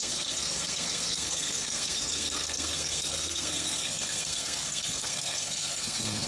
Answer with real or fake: fake